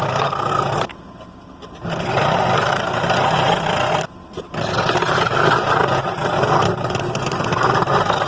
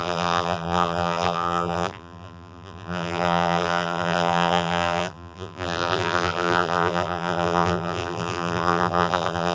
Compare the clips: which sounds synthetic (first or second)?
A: second